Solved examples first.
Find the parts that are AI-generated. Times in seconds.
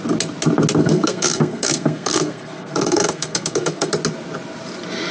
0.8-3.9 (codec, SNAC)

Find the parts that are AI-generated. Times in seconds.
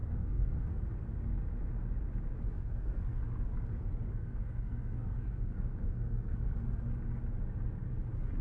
0.0-0.8 (codec, SNAC); 2.6-3.2; 4.1-6.8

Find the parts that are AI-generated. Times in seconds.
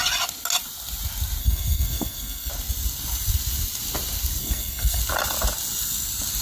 1.4-2.5 (codec, SNAC); 4.4-5.0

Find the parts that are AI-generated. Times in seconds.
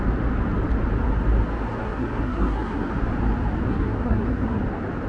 1.8-2.9 (codec, SNAC); 3.7-4.6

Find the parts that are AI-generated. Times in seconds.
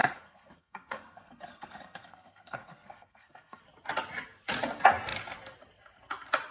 0.0-3.6 (codec, SNAC)